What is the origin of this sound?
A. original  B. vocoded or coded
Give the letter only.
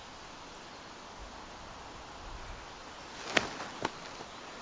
A